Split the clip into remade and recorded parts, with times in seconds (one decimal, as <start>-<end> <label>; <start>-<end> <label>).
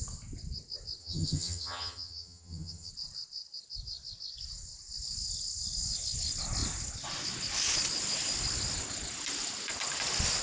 0.0-1.0 recorded; 1.0-2.9 remade; 2.9-10.4 recorded